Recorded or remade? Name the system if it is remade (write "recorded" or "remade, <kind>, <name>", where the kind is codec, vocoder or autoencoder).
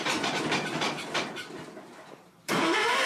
remade, vocoder, BigVGAN v2